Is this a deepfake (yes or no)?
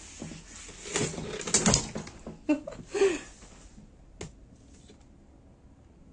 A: no